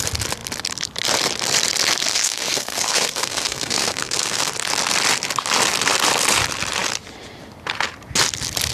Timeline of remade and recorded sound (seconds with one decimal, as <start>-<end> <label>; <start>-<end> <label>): 0.0-2.1 recorded; 2.1-4.5 remade; 4.5-8.7 recorded